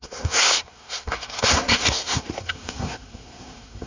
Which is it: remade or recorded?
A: remade